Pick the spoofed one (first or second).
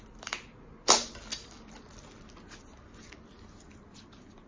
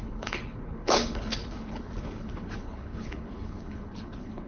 second